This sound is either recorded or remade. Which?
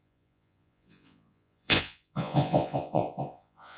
remade